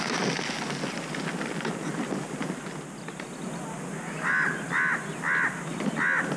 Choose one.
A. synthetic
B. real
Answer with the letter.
B